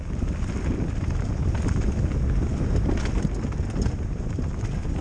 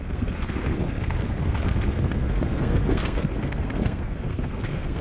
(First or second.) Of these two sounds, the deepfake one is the second